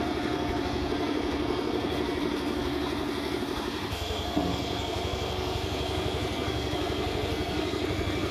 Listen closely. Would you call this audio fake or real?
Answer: fake